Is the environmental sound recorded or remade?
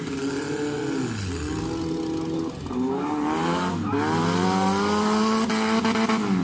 recorded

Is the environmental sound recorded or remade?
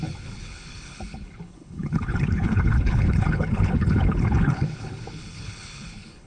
remade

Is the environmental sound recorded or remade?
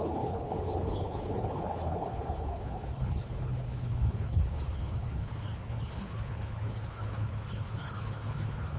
remade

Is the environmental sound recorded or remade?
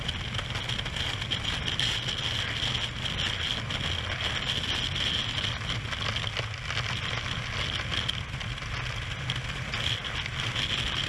recorded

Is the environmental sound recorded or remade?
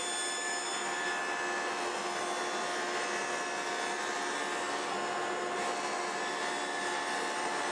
recorded